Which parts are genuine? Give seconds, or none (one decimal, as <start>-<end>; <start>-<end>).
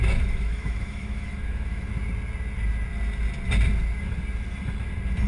1.9-5.3